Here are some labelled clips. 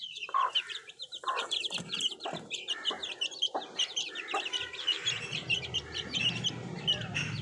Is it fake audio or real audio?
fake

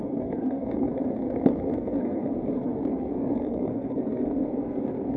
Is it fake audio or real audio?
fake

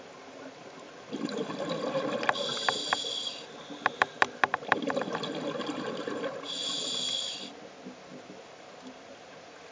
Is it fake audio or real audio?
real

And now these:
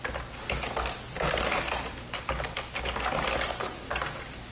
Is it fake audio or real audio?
real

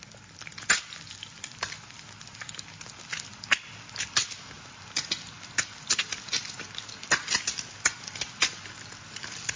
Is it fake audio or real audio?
real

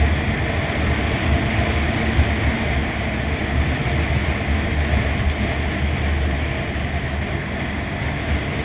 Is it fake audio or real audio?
real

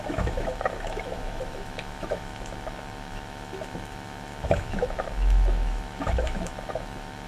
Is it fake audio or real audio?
fake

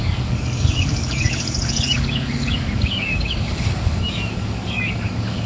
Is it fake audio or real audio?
fake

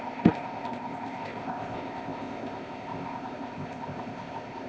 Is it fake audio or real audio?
fake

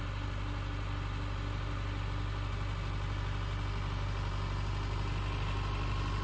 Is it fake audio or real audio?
real